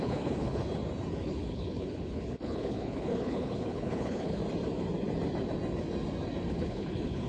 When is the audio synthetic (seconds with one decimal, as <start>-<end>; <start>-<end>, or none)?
0.0-0.6; 1.2-4.4; 6.5-7.3

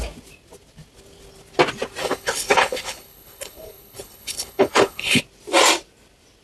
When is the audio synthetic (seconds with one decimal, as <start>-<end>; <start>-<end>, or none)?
2.0-5.2

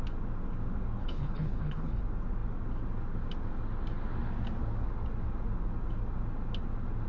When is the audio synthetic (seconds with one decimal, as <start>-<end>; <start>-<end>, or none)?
1.0-2.0

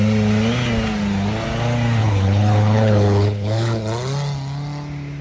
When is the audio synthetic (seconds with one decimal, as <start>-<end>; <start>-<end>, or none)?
2.0-3.8

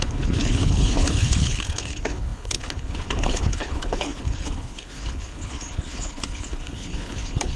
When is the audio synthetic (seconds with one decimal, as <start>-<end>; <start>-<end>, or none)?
0.0-7.6

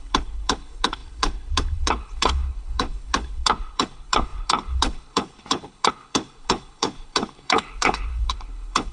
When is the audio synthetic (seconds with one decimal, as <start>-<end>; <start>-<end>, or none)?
0.0-8.9